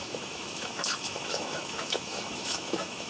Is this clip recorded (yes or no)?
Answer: no